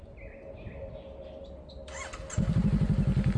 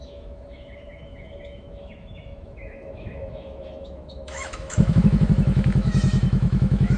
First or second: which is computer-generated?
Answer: second